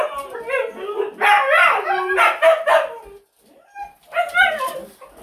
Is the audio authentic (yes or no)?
yes